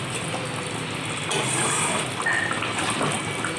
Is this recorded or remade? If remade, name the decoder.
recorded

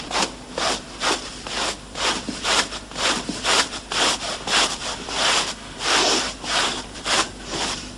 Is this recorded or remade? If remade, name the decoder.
remade, vocoder, BigVGAN v2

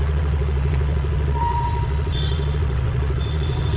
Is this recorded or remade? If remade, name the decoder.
remade, vocoder, WaveNeXt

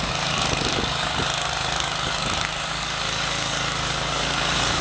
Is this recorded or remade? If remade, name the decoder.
remade, codec, DAC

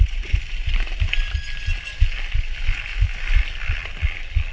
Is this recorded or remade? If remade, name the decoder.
recorded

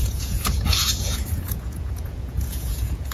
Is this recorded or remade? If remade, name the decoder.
remade, vocoder, Vocos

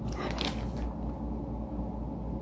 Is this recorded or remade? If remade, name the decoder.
recorded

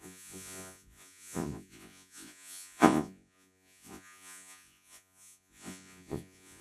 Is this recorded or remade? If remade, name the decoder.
remade, vocoder, Vocos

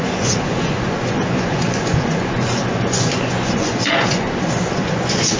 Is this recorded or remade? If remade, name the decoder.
remade, vocoder, Vocos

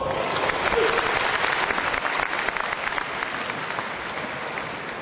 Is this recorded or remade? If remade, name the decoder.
recorded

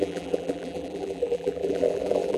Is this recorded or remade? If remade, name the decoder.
remade, vocoder, BigVGAN v2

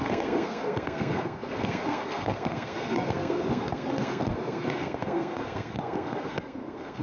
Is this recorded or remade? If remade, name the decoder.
remade, codec, SNAC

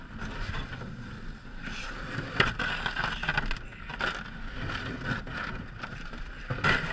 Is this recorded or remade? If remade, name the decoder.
recorded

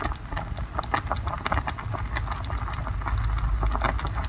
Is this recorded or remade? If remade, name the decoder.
recorded